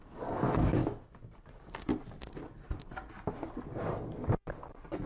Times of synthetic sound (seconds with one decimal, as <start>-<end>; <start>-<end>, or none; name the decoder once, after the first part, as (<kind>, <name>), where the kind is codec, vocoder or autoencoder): 0.0-0.8 (codec, DAC); 1.5-1.9